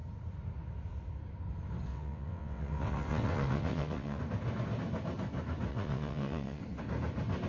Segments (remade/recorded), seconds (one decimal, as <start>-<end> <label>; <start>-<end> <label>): 0.0-1.9 recorded; 1.9-4.2 remade; 4.2-5.7 recorded; 5.7-6.6 remade; 6.6-7.5 recorded